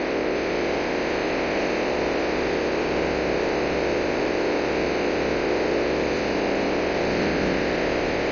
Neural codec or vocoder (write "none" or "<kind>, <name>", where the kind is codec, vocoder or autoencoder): none